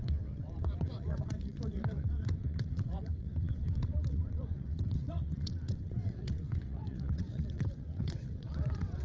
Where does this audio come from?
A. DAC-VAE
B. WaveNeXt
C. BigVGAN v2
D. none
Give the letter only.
B